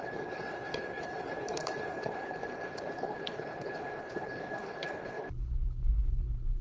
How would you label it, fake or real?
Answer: fake